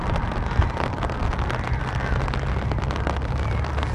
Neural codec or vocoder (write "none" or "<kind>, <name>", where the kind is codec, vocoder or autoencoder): none